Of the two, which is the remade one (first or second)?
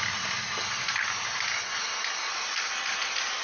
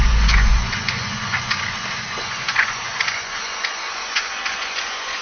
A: second